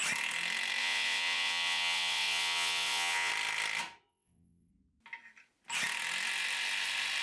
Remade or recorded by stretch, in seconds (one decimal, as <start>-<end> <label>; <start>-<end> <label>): 0.0-0.8 recorded; 0.8-3.3 remade; 3.3-4.1 recorded; 4.1-4.7 remade; 4.7-7.2 recorded